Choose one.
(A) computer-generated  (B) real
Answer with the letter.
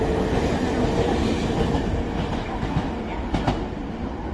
B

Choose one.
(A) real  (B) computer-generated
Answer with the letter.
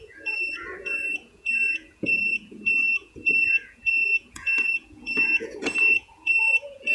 B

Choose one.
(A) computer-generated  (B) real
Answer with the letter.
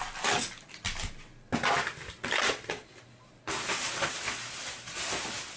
B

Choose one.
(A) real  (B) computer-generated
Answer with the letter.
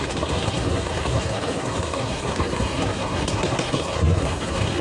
B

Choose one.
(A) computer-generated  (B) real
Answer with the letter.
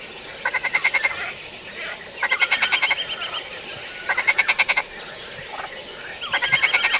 B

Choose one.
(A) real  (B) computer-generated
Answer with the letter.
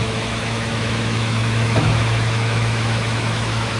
B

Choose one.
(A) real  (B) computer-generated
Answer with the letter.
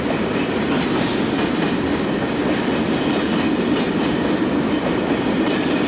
A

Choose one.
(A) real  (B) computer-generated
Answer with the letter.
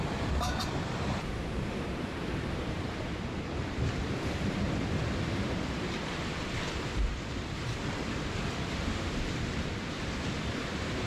B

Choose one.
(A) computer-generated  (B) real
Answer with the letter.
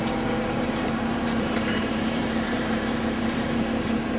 A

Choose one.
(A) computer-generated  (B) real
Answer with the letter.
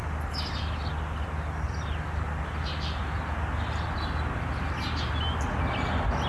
B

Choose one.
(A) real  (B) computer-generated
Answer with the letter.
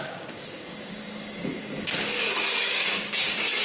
B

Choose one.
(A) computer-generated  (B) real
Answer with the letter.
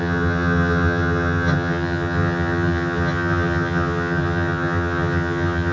A